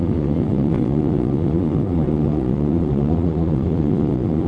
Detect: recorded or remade remade